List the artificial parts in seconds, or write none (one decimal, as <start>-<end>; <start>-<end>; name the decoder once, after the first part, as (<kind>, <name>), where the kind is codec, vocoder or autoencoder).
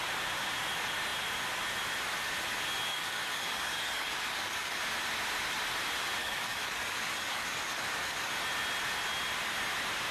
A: 2.9-4.8 (codec, DAC); 6.2-8.3